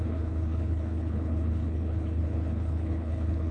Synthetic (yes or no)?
yes